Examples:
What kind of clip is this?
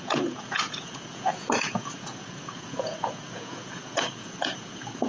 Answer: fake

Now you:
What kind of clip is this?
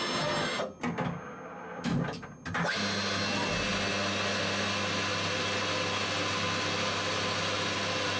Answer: real